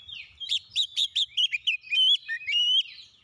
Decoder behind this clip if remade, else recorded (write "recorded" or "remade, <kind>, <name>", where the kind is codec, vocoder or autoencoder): remade, vocoder, BigVGAN v2